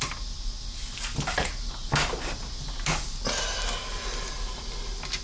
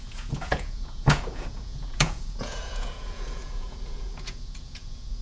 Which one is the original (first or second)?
first